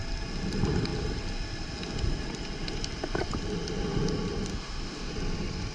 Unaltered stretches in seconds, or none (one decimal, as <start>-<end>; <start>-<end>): 0.0-4.5; 5.1-5.7